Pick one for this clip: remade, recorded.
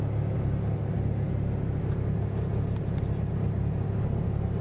recorded